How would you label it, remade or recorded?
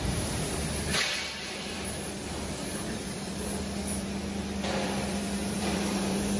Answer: remade